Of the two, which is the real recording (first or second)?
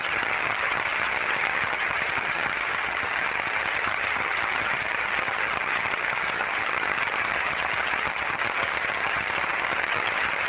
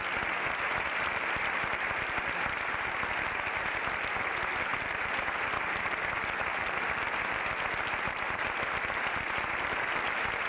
second